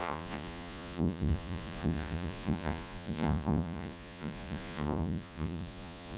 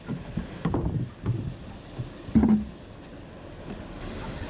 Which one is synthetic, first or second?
first